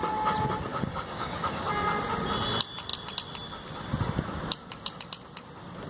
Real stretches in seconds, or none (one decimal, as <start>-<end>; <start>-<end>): 0.0-0.7; 1.7-5.9